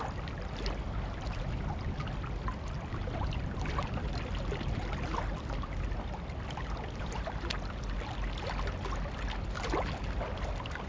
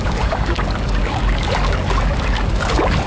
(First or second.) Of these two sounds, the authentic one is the first